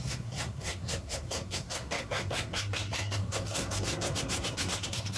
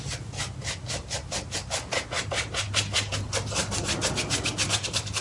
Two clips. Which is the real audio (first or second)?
second